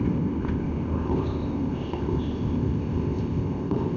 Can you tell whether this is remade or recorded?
remade